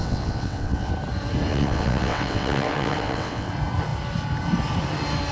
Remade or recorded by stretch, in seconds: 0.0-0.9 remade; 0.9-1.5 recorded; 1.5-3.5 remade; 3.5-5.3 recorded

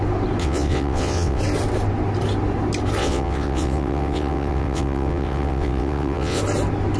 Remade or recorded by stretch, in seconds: 0.0-0.4 recorded; 0.4-1.4 remade; 1.4-3.0 recorded; 3.0-6.4 remade; 6.4-7.0 recorded